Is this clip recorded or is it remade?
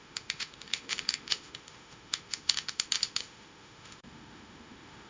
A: remade